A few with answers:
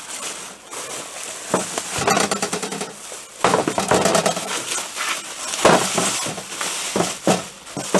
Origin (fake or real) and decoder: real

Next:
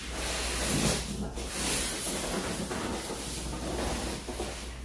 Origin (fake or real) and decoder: real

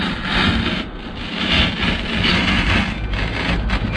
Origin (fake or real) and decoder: real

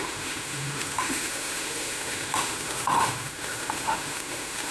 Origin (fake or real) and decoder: fake, autoencoder, DAC-VAE